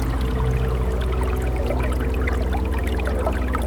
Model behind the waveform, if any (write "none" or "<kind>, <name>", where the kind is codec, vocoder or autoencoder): vocoder, Vocos